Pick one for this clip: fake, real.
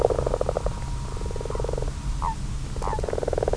real